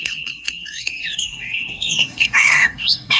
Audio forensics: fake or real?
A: fake